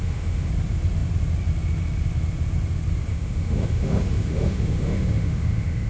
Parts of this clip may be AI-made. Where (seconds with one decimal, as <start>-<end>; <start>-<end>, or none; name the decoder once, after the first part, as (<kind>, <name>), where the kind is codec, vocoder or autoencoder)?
0.0-0.5 (autoencoder, DAC-VAE); 3.1-5.9